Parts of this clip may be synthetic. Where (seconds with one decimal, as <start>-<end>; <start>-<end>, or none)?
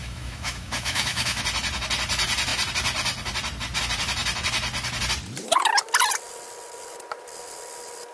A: 0.0-1.4